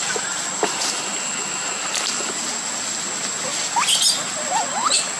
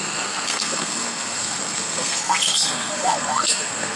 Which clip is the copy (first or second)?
second